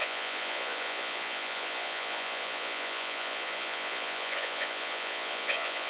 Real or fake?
fake